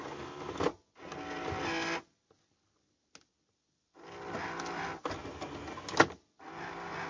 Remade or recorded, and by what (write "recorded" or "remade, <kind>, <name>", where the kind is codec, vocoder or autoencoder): recorded